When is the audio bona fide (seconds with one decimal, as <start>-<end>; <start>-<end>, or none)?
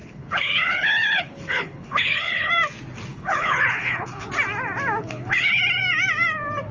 2.5-3.1; 4.3-5.0; 5.6-6.7